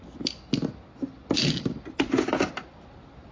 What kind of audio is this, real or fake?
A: real